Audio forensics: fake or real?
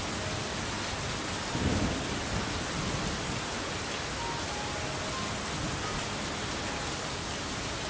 real